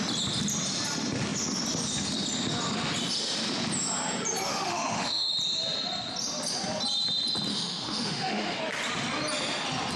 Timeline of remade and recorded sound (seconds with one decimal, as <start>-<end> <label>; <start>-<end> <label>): 0.0-4.5 recorded; 4.5-5.3 remade; 5.3-7.5 recorded; 7.5-8.6 remade; 8.6-10.0 recorded